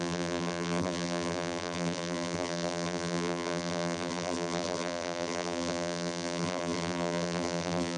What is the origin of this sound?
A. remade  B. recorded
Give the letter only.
A